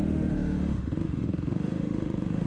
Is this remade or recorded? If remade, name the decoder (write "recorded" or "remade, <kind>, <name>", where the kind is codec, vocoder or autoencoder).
remade, autoencoder, DAC-VAE